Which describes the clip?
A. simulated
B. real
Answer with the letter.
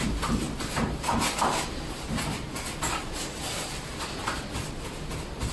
B